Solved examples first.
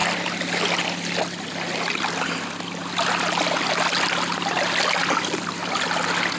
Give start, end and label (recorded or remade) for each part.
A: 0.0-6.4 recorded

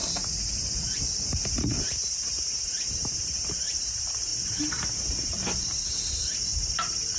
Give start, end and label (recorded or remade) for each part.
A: 0.0-7.2 remade

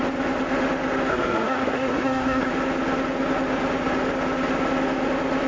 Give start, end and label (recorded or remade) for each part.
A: 0.0-1.1 recorded; 1.1-2.5 remade; 2.5-5.5 recorded

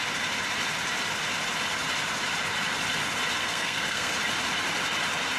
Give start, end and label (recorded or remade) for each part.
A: 0.0-3.4 recorded; 3.4-4.1 remade; 4.1-5.4 recorded